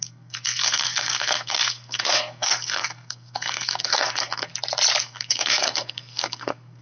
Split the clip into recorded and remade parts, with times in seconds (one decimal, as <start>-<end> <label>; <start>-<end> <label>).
0.0-4.5 remade; 4.5-5.0 recorded; 5.0-6.8 remade